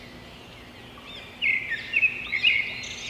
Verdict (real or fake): real